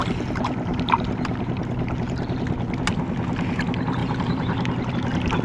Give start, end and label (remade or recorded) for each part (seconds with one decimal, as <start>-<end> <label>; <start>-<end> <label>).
0.0-2.8 remade; 2.8-4.0 recorded; 4.0-4.9 remade; 4.9-5.4 recorded